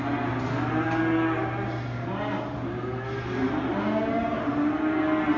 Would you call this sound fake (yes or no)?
no